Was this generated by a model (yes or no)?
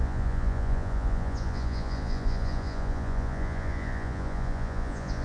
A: yes